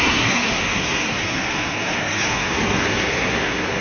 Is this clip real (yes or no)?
no